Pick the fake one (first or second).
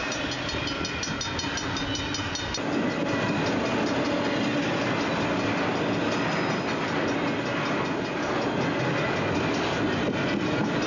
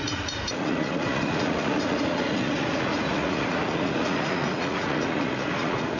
second